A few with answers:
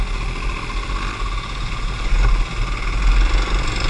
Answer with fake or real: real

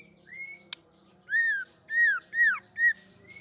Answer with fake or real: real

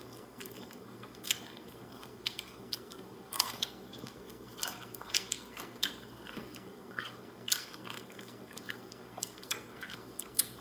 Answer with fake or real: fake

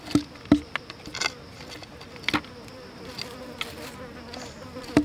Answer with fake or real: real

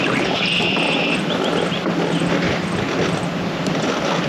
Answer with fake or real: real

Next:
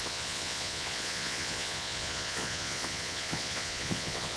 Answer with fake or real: fake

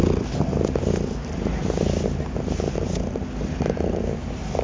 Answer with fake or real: real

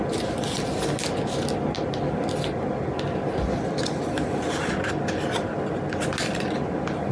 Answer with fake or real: real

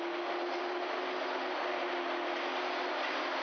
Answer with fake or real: real